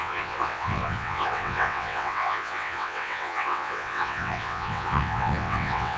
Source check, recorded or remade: remade